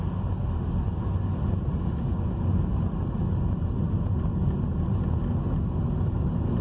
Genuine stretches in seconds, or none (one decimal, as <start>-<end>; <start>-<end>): 0.0-6.6